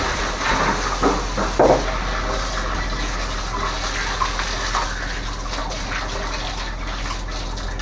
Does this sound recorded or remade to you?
recorded